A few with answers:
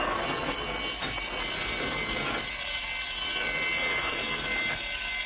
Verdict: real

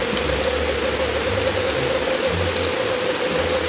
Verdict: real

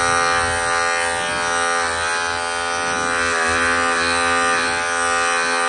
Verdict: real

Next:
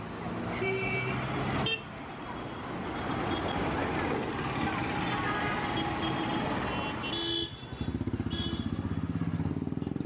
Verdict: real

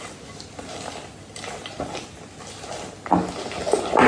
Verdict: real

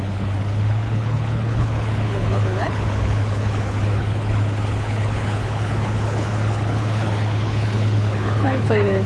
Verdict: fake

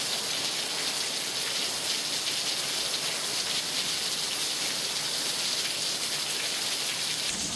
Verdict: real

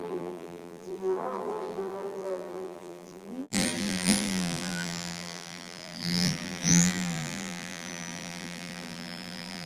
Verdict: fake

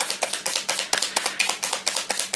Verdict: real